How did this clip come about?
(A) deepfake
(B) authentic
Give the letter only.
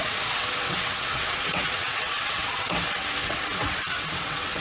A